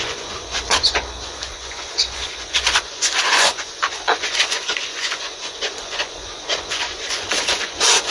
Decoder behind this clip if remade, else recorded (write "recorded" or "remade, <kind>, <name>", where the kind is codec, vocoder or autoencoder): remade, vocoder, Vocos